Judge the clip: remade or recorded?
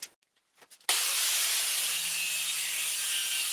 remade